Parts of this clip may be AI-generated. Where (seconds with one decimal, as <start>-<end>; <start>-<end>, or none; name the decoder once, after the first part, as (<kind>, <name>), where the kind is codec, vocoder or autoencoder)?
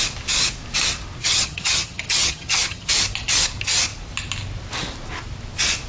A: 1.2-2.9 (vocoder, HiFi-GAN)